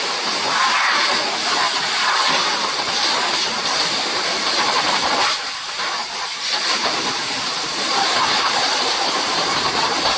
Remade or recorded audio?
remade